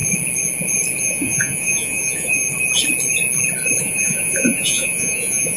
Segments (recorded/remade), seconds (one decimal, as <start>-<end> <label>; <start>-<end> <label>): 0.0-1.0 recorded; 1.0-2.4 remade; 2.4-3.8 recorded; 3.8-5.6 remade